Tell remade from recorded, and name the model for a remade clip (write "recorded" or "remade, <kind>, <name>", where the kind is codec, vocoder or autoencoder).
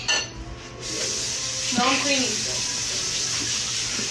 recorded